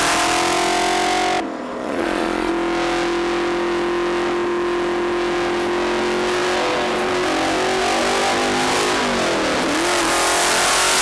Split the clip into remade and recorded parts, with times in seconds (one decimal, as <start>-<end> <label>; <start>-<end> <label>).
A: 0.0-1.8 recorded; 1.8-2.5 remade; 2.5-11.0 recorded